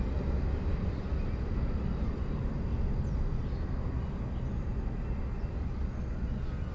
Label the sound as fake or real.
real